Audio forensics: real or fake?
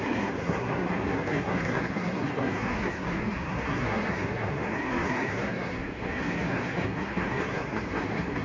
fake